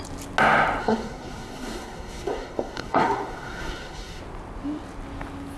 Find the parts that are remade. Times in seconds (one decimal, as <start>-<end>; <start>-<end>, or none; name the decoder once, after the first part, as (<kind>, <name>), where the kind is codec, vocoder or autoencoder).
0.8-4.2 (codec, SNAC)